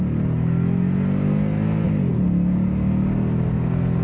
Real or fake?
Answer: real